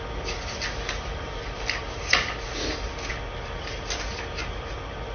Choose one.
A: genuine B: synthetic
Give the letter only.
A